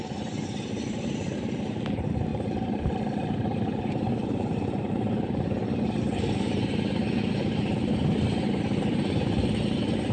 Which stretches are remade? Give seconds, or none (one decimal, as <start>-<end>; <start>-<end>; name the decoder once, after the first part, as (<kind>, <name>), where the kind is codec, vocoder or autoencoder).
0.0-10.1 (vocoder, BigVGAN v2)